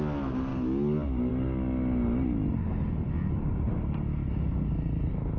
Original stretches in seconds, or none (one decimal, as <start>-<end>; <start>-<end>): 0.0-5.4